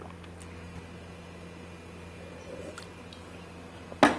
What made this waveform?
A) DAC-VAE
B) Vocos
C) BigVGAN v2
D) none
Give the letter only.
D